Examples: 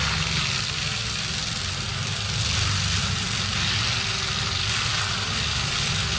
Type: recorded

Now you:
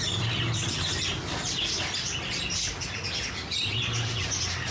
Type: recorded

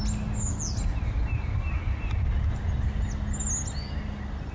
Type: recorded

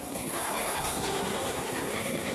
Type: remade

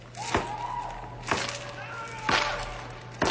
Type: recorded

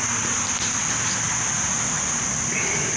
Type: recorded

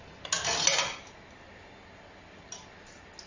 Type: recorded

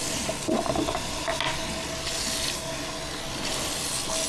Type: recorded